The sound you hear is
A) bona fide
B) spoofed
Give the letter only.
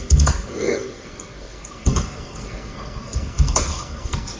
B